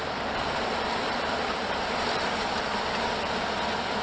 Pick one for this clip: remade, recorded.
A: remade